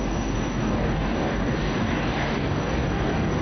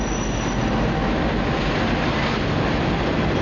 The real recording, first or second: second